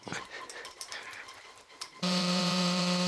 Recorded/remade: remade